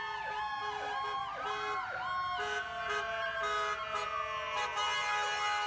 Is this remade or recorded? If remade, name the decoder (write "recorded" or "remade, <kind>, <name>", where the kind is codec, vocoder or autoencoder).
recorded